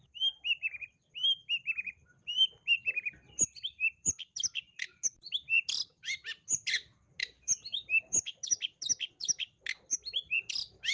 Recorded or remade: recorded